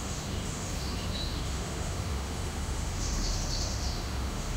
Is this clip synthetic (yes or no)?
yes